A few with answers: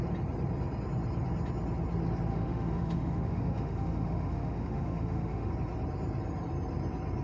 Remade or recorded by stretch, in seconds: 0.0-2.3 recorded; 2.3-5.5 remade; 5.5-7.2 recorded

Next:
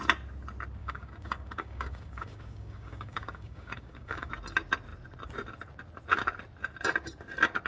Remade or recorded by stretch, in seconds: 0.0-0.8 recorded; 0.8-4.3 remade; 4.3-7.7 recorded